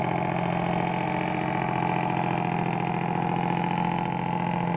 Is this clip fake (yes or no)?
no